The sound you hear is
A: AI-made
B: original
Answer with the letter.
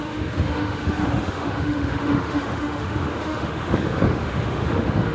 A